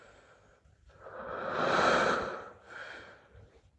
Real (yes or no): yes